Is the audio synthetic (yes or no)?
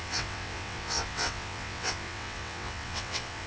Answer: yes